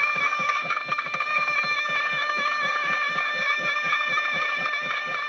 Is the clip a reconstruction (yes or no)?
yes